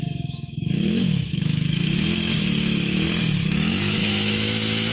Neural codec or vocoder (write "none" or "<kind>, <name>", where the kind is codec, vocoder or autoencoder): autoencoder, DAC-VAE